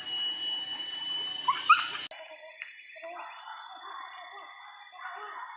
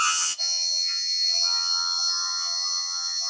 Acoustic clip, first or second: first